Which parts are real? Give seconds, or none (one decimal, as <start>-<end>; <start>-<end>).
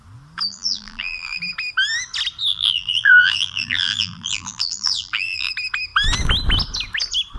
0.0-0.5; 1.4-2.5; 5.5-7.4